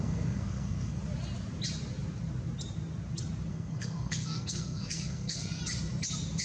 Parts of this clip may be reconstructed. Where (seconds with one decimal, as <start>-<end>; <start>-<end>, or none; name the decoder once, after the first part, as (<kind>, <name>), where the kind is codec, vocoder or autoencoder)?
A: 0.0-1.0 (codec, SNAC); 3.5-5.6